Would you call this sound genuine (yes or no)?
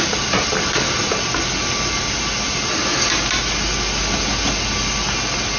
yes